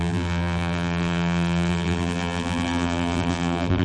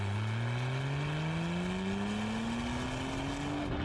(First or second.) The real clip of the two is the second